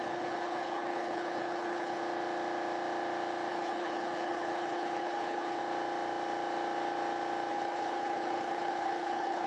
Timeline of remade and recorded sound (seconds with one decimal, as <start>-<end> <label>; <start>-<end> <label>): 0.0-2.0 remade; 2.0-3.5 recorded; 3.5-5.6 remade; 5.6-7.5 recorded; 7.5-9.5 remade